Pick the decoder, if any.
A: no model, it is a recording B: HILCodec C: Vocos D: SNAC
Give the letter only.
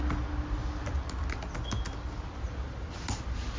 A